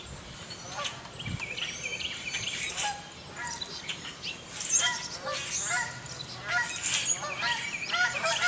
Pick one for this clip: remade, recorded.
recorded